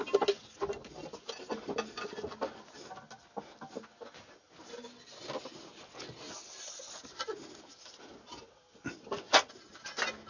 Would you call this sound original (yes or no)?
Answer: yes